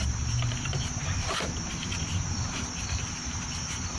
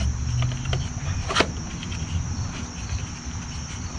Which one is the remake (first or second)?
first